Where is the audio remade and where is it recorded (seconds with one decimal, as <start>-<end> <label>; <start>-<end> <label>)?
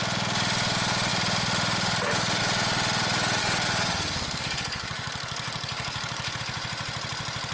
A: 0.0-3.4 recorded; 3.4-6.4 remade; 6.4-7.5 recorded